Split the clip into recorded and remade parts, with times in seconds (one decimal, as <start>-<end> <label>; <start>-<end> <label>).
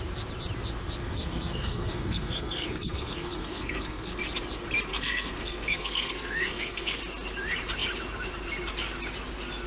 0.0-1.0 recorded; 1.0-4.2 remade; 4.2-4.9 recorded; 4.9-7.0 remade; 7.0-9.7 recorded